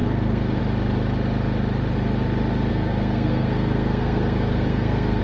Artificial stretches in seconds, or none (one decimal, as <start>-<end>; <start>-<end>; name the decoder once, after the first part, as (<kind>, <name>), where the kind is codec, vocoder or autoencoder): 0.0-0.6 (codec, SNAC); 2.7-5.2